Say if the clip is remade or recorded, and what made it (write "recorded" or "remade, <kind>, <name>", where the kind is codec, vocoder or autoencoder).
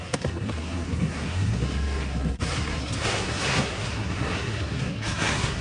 remade, codec, SNAC